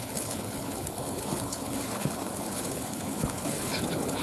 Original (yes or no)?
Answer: no